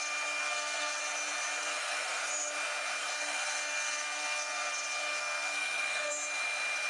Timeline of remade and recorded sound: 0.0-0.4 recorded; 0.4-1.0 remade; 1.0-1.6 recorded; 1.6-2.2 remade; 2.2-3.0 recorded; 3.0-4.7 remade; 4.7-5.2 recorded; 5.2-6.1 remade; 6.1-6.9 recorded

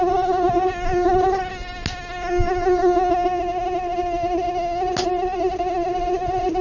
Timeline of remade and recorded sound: 0.0-6.6 recorded